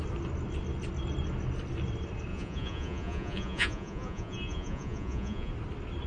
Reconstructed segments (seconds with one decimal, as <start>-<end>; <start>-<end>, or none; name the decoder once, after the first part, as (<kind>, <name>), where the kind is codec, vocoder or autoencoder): 2.3-5.5 (vocoder, Vocos)